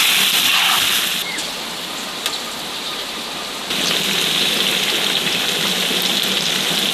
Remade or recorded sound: recorded